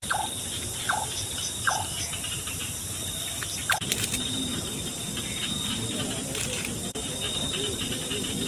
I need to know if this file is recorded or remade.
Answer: remade